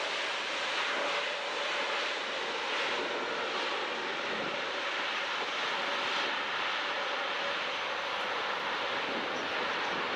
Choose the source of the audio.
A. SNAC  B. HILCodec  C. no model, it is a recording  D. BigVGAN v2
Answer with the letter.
C